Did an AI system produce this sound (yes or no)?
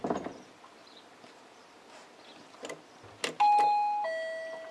no